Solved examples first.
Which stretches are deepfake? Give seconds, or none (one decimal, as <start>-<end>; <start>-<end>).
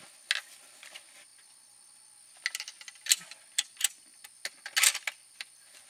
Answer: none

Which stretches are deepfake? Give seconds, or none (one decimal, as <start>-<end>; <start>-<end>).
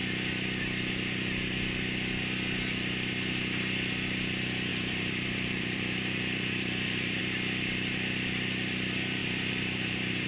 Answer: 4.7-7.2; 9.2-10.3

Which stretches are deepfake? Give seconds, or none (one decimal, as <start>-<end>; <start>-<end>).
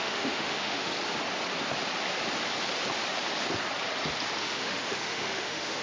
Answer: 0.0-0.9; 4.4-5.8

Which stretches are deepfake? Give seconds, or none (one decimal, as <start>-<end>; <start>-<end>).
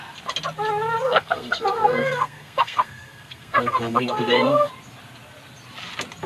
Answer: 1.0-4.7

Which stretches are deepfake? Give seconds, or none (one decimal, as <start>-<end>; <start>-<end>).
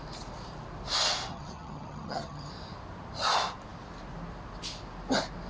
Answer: 1.3-2.5